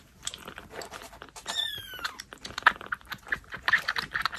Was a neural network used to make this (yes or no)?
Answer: no